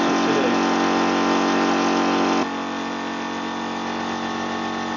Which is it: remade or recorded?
recorded